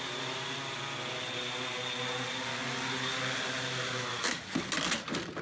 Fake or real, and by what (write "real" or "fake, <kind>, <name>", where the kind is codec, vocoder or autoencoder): real